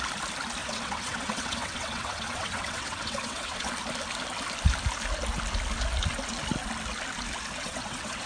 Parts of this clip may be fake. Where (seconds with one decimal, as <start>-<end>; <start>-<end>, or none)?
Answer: 0.6-3.7; 7.6-8.3